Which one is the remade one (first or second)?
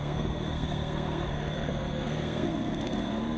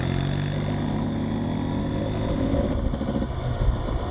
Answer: first